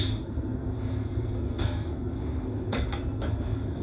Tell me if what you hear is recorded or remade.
remade